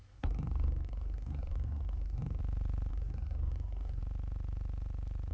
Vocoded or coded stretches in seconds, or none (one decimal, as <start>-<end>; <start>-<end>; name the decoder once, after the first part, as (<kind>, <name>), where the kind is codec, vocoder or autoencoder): 0.0-2.4 (codec, SNAC); 2.9-4.0